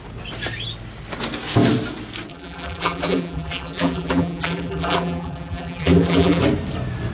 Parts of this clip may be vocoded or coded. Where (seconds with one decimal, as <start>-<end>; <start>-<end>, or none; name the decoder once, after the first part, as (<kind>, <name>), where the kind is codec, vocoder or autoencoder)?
2.3-6.4 (vocoder, BigVGAN v2)